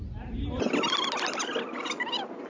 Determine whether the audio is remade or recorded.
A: recorded